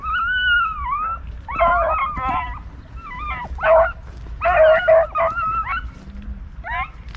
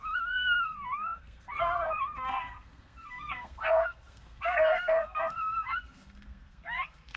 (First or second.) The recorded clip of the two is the first